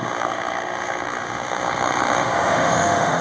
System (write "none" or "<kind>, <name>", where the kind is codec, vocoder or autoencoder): autoencoder, DAC-VAE